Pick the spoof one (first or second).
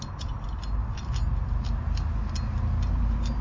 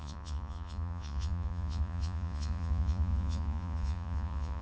second